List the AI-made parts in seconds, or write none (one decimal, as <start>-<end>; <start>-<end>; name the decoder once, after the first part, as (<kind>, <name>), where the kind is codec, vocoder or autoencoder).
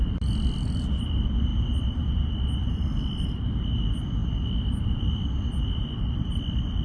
none